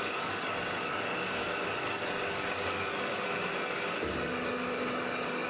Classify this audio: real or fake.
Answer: fake